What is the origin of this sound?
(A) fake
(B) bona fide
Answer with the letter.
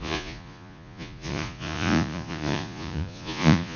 A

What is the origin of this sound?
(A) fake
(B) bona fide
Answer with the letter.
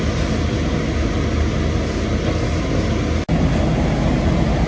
B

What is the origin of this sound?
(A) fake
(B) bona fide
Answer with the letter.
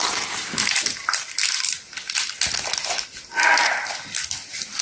B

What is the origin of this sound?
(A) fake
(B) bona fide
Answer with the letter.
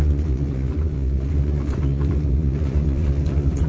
A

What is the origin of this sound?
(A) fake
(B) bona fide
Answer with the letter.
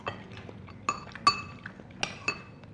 B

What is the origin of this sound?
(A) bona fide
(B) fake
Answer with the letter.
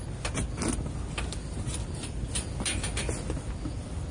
A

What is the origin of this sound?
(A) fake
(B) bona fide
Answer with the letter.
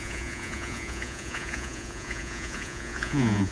A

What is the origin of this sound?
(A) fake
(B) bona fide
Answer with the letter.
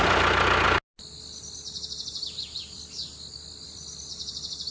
B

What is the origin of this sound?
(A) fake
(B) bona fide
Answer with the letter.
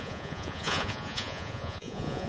A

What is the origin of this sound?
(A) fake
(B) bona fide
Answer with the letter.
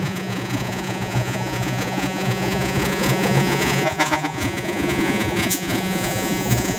A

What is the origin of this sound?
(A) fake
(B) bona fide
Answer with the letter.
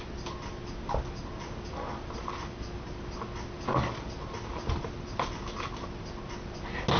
B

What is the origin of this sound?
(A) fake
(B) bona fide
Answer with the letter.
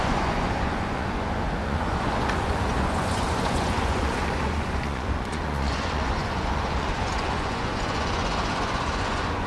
A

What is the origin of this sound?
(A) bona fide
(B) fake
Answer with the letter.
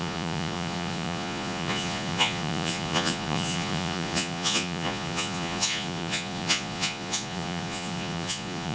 B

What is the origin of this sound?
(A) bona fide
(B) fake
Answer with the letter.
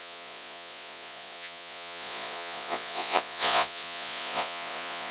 B